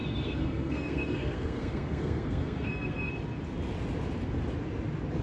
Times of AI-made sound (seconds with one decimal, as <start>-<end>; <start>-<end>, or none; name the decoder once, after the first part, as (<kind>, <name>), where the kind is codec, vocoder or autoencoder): 0.0-3.1 (codec, SNAC)